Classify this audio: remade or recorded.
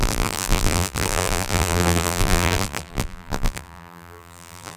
remade